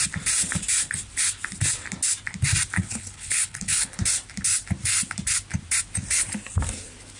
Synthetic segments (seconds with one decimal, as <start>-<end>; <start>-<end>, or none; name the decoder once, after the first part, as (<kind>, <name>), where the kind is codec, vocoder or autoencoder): 2.8-4.0 (codec, HILCodec)